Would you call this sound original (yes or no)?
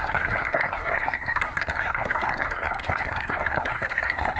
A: no